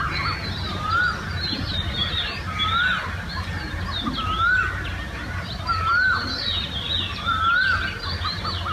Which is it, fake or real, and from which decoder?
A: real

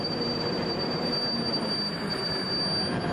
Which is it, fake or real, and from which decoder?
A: fake, vocoder, BigVGAN v2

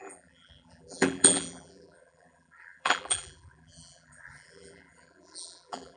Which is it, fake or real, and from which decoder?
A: fake, vocoder, BigVGAN v2